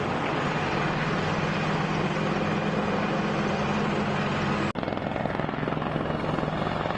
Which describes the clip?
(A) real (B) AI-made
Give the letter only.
A